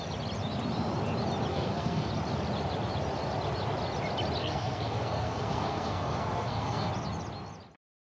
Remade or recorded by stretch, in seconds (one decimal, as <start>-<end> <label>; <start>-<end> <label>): 0.0-1.5 recorded; 1.5-2.1 remade; 2.1-4.4 recorded; 4.4-6.9 remade; 6.9-8.0 recorded